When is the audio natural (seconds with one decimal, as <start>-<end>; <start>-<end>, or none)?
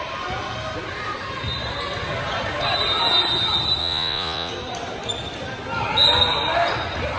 0.0-3.8; 4.5-7.2